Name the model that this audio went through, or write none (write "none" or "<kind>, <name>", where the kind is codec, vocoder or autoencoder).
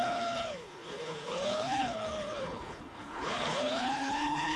codec, HILCodec